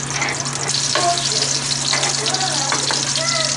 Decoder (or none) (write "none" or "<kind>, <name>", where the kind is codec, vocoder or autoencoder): none